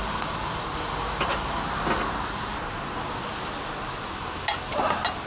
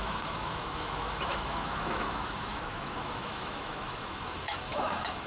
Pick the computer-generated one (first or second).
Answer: second